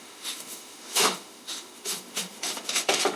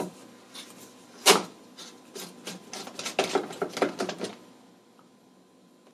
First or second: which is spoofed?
first